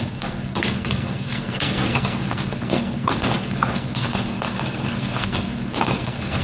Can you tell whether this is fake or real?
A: fake